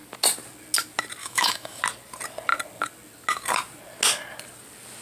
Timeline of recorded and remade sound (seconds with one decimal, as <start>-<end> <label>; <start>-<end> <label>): 0.0-1.2 recorded; 1.2-1.8 remade; 1.8-5.0 recorded